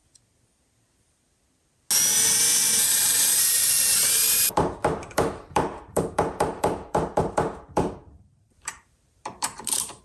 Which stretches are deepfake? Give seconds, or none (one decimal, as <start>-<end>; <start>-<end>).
2.6-10.0